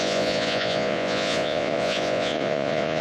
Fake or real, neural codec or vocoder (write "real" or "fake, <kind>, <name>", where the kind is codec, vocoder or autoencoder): fake, vocoder, Vocos